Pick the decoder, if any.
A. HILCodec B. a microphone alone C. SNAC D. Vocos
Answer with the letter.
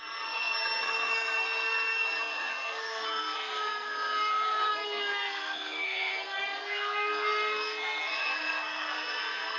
C